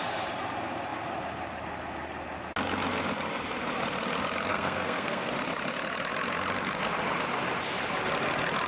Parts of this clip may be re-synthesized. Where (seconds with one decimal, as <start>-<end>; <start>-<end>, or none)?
4.5-5.3